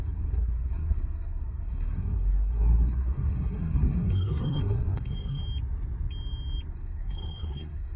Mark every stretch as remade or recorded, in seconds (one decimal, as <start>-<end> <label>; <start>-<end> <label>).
0.0-5.4 remade; 5.4-6.7 recorded; 6.7-8.0 remade